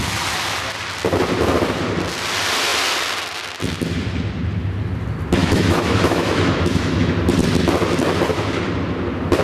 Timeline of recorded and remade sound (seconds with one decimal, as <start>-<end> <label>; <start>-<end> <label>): 0.0-5.4 recorded; 5.4-7.1 remade; 7.1-9.4 recorded